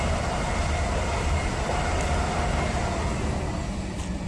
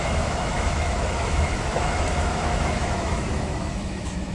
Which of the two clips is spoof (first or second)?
second